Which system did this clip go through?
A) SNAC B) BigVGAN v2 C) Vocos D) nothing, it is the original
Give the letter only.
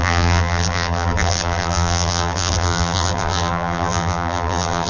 B